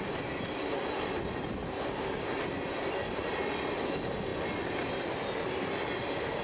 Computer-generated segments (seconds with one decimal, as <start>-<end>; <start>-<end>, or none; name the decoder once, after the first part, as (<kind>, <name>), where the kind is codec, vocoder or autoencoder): none